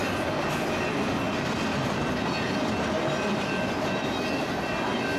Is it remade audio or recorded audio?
recorded